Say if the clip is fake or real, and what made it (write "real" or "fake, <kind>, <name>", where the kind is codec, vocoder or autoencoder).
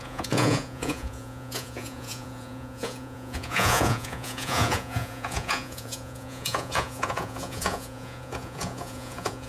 fake, vocoder, Vocos